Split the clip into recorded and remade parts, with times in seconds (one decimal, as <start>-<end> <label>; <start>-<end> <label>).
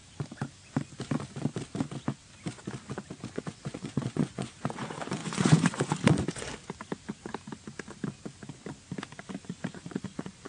0.0-3.3 recorded; 3.3-6.5 remade; 6.5-9.4 recorded; 9.4-10.5 remade